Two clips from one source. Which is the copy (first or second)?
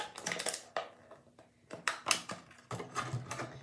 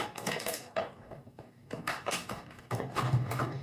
second